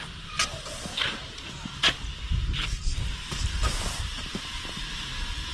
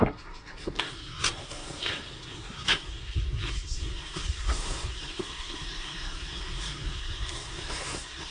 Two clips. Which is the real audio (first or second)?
first